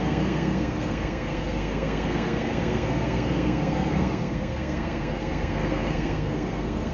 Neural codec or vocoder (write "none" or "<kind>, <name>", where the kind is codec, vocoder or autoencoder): codec, SNAC